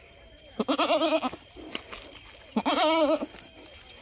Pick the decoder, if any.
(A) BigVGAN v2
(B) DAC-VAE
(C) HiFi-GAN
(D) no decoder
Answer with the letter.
D